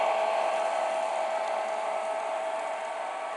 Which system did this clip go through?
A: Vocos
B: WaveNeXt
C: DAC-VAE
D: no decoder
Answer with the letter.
D